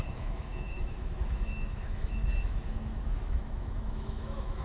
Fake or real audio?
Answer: fake